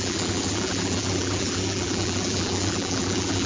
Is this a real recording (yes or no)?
no